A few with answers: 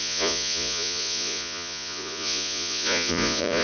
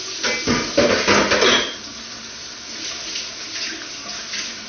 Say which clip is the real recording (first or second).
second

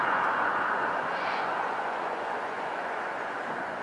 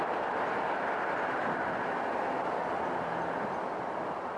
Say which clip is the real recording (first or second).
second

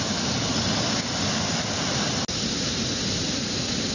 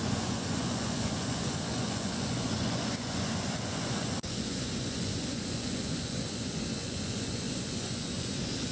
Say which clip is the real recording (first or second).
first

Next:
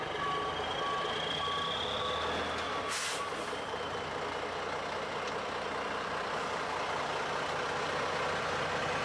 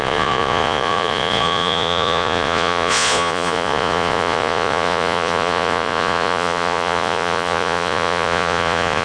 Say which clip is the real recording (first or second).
first